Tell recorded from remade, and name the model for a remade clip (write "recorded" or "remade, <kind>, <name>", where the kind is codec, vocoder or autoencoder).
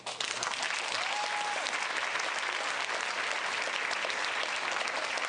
recorded